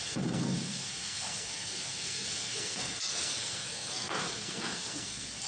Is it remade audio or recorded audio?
remade